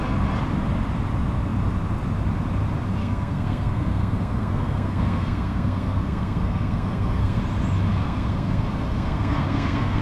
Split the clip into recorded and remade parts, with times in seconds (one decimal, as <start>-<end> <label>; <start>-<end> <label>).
0.0-3.0 recorded; 3.0-7.4 remade; 7.4-7.9 recorded; 7.9-10.0 remade